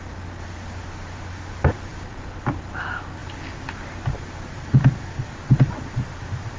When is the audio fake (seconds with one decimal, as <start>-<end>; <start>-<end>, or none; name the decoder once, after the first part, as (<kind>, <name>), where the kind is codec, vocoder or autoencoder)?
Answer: none

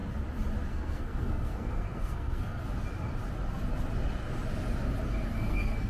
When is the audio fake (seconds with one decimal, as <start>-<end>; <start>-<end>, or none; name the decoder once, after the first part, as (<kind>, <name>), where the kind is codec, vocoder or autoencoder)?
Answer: 0.7-2.6 (codec, SNAC); 5.3-5.9

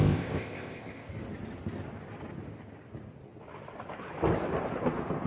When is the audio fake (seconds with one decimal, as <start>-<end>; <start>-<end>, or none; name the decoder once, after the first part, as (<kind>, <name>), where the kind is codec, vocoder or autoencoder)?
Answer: 0.0-1.1 (codec, ZipCodec)

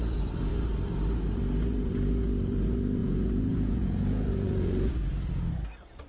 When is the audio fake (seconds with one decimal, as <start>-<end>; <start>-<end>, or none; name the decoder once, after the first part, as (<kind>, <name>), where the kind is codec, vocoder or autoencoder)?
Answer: 3.0-5.5 (vocoder, Vocos)

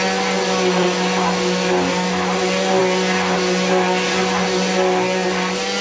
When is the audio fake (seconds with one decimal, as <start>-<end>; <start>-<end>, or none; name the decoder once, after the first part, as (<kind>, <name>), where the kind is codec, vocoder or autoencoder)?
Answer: none